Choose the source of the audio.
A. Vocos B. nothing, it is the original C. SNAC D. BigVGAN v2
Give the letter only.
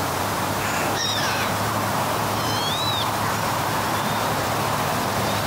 D